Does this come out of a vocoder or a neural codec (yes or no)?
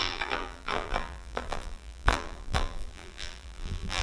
yes